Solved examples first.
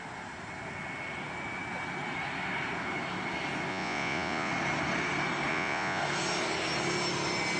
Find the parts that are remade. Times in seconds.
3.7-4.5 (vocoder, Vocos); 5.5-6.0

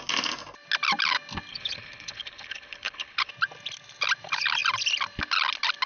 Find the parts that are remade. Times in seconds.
1.5-3.3 (codec, HILCodec)

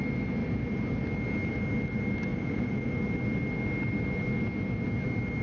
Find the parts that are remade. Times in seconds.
2.3-2.9 (vocoder, Vocos)